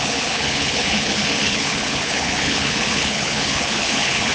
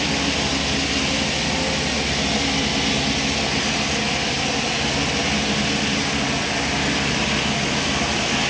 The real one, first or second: second